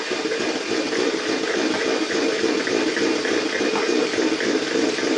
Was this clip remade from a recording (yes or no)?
no